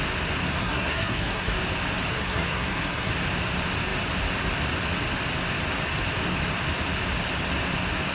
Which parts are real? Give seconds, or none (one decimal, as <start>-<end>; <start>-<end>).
0.0-0.6; 1.5-2.1; 3.1-8.1